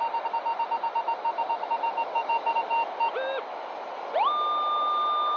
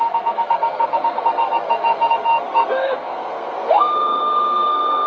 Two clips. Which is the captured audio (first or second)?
first